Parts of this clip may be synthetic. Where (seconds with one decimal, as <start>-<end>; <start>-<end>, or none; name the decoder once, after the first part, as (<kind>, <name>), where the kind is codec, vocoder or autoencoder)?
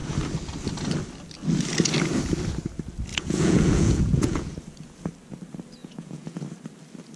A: 3.1-4.4 (vocoder, Vocos); 5.8-6.4